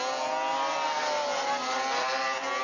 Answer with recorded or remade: recorded